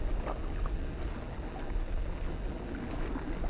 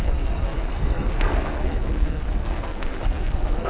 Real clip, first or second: first